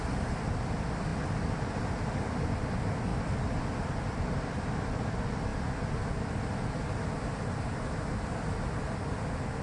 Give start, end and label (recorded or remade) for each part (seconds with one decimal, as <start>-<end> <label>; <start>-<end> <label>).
0.0-9.6 recorded